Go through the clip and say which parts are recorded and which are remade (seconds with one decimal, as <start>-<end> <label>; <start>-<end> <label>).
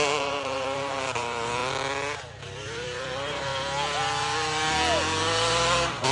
0.0-1.6 remade; 1.6-2.4 recorded; 2.4-3.5 remade; 3.5-6.1 recorded